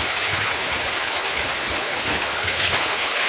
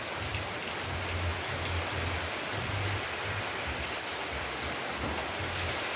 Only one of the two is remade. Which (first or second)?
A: first